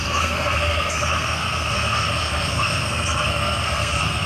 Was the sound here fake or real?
fake